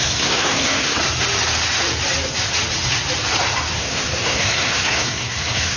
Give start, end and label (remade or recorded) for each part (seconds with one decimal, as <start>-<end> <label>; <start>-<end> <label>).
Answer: 0.0-1.0 remade; 1.0-3.8 recorded; 3.8-5.8 remade